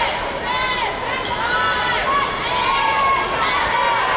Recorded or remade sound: recorded